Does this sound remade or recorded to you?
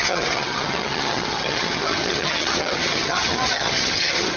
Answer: remade